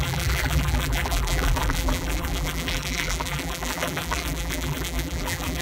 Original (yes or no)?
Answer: no